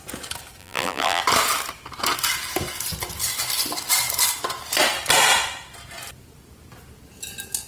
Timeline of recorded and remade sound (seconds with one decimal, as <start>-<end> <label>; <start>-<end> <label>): 0.0-0.6 recorded; 0.6-1.2 remade; 1.2-7.7 recorded